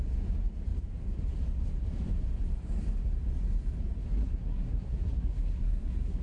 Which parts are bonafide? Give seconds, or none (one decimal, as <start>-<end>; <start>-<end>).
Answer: 0.0-4.2